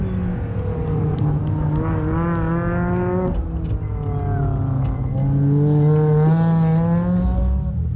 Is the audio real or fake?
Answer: real